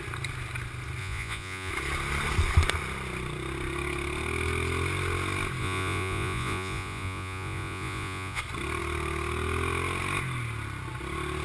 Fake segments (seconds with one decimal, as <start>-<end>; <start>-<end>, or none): 1.0-1.7; 5.6-8.4